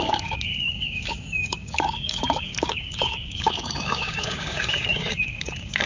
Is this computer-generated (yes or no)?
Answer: yes